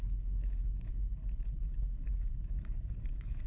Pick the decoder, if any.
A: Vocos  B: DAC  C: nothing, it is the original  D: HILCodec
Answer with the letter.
D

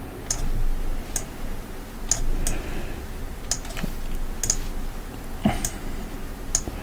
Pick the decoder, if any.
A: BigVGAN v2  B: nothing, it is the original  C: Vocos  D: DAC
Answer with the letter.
B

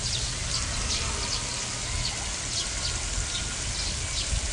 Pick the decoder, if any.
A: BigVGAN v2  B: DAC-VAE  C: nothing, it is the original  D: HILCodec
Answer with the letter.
C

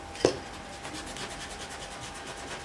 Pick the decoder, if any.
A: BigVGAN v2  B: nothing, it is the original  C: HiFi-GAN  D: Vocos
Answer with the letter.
B